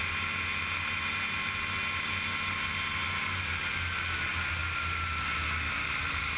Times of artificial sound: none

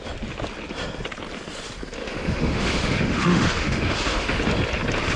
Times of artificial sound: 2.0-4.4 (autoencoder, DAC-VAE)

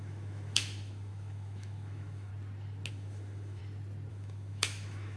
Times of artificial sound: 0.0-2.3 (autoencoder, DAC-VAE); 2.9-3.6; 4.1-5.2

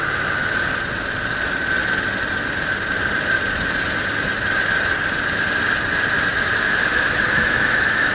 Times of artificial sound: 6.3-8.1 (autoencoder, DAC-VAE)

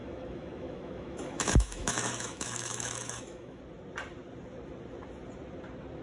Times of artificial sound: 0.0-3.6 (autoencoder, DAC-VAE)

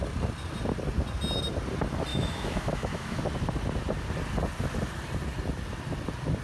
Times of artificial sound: 2.1-3.2 (autoencoder, DAC-VAE)

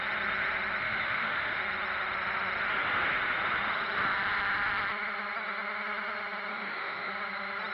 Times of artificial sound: 0.8-1.6 (autoencoder, DAC-VAE); 6.5-7.1